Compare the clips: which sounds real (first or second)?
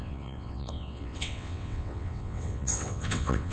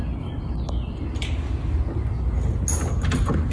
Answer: second